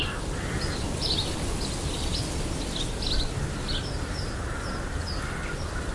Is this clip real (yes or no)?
yes